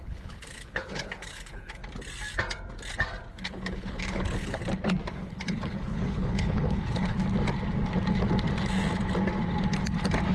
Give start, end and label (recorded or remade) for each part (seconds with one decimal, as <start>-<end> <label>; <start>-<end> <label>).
0.0-1.8 remade; 1.8-3.3 recorded; 3.3-4.6 remade; 4.6-5.1 recorded; 5.1-7.2 remade; 7.2-10.3 recorded